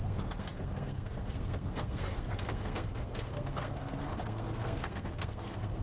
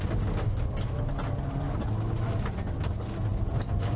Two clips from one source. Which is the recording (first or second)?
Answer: second